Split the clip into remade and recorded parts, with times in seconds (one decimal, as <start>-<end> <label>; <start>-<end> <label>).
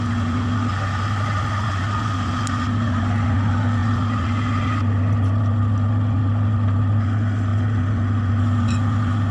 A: 0.0-9.3 recorded